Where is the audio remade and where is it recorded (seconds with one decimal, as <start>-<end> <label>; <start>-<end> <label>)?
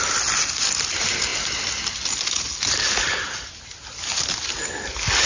0.0-5.3 recorded